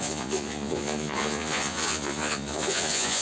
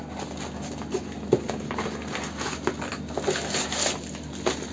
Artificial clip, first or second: first